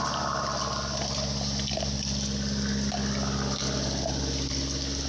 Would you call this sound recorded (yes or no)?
yes